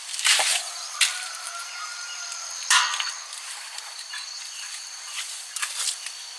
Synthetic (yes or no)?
no